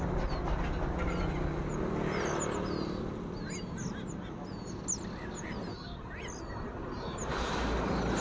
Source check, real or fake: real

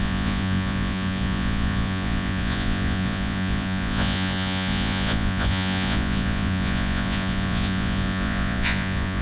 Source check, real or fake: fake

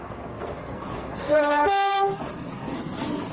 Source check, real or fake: fake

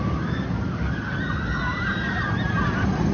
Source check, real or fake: real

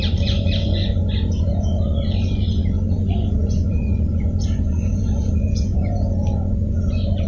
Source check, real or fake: fake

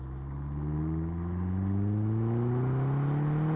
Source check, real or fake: real